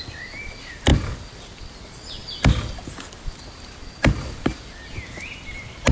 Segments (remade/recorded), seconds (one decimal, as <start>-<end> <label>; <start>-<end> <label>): 0.0-5.9 recorded